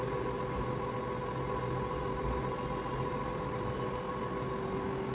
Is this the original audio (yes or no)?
yes